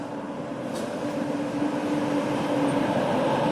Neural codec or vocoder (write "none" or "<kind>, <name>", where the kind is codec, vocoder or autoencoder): vocoder, BigVGAN v2